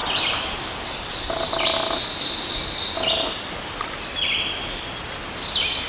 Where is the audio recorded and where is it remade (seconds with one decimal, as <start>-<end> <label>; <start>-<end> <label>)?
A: 0.0-5.9 recorded